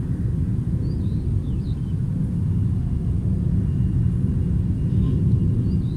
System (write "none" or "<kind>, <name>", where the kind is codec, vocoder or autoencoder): none